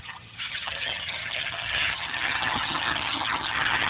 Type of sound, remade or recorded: remade